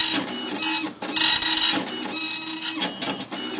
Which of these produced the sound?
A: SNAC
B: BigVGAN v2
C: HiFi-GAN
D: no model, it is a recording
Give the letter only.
D